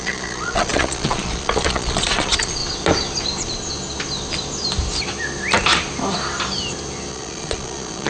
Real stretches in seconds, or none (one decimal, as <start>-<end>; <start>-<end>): 2.6-7.1